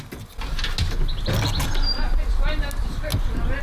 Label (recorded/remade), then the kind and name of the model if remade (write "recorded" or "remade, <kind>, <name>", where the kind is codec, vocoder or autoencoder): recorded